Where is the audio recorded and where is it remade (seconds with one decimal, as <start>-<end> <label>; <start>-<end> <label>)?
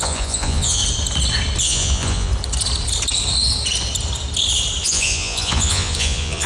0.0-0.8 remade; 0.8-1.6 recorded; 1.6-2.3 remade; 2.3-4.8 recorded; 4.8-6.5 remade